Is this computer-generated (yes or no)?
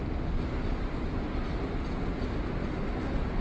no